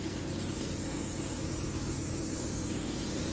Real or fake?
fake